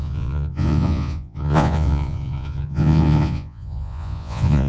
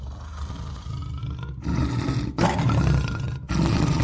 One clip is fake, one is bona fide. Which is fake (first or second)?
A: first